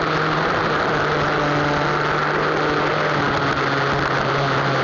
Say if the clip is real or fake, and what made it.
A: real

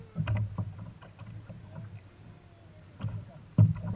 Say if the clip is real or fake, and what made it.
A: real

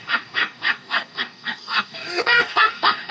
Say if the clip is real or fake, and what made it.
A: fake, codec, DAC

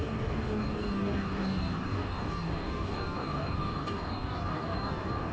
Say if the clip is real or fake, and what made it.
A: fake, codec, DAC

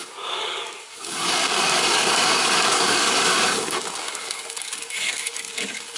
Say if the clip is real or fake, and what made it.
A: fake, codec, DAC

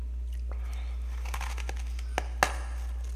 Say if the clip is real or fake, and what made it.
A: real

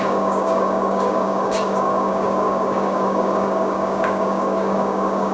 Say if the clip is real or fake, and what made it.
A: fake, codec, DAC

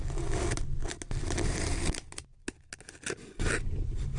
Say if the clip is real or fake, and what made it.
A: real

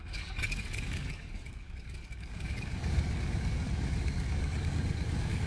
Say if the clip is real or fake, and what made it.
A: fake, codec, DAC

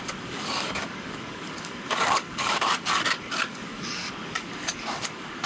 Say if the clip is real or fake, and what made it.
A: fake, codec, DAC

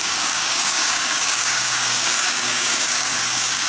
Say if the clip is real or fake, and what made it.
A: fake, codec, DAC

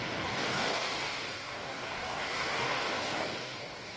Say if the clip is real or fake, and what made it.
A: fake, codec, DAC